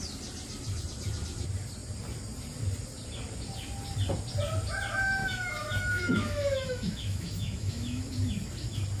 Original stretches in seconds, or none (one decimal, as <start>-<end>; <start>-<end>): 0.0-5.2; 8.0-9.0